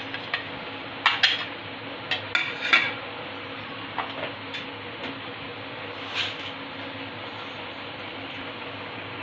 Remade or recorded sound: recorded